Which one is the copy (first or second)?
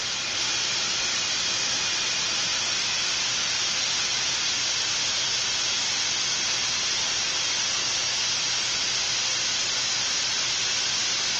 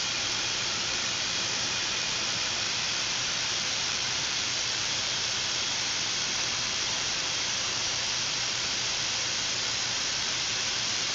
second